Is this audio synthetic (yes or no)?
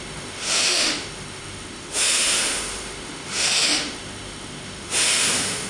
yes